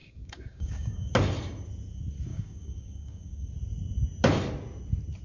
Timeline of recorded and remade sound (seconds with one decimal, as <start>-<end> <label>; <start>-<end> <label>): 0.0-1.1 remade; 1.1-2.3 recorded; 2.3-3.5 remade; 3.5-5.2 recorded